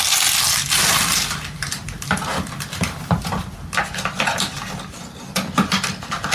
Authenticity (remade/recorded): recorded